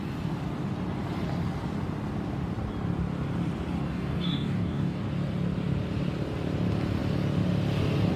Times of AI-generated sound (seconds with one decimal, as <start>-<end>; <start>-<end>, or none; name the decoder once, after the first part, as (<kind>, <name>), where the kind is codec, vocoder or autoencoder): 3.8-5.0 (codec, DAC)